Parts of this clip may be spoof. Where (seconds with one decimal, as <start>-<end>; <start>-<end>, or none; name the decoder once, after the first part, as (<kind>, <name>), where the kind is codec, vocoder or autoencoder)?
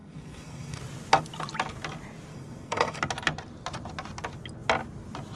0.0-0.8 (codec, SNAC); 2.3-3.0